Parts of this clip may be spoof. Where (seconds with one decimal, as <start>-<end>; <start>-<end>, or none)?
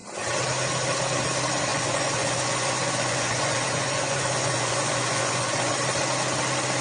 1.7-5.8